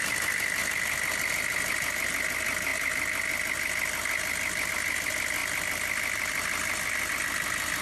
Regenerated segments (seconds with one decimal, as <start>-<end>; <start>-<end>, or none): none